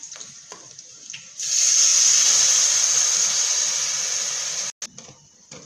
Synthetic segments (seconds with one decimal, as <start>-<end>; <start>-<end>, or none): none